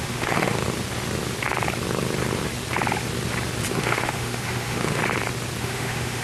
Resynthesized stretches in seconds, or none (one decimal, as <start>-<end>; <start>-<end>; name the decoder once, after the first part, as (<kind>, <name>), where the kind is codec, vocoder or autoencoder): 0.0-0.6 (autoencoder, DAC-VAE); 3.7-5.0; 5.6-6.2